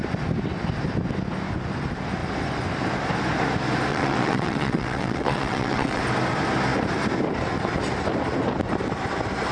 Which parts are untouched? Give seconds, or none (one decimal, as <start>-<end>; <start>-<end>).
0.0-3.9; 6.0-9.5